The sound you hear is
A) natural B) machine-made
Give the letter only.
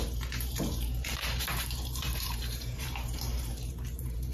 B